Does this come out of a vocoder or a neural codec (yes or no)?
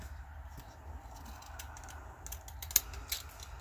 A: no